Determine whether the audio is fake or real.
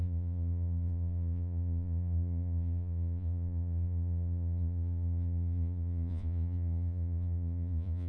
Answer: fake